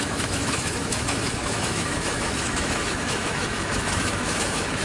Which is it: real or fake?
fake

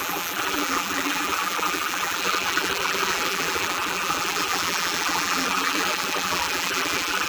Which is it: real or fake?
fake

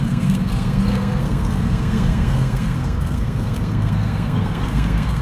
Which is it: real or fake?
fake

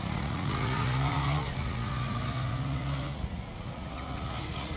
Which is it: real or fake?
fake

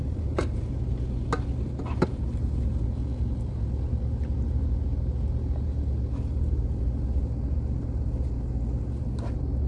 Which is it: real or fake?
real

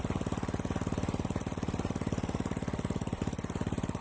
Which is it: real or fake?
fake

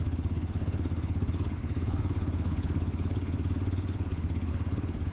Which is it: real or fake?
fake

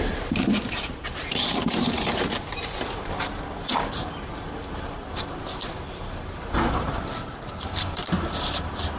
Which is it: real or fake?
fake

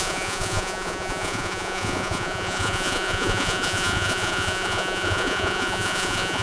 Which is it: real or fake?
fake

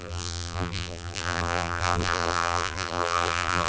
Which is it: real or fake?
fake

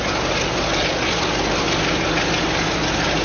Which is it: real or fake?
real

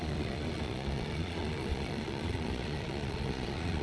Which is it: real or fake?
fake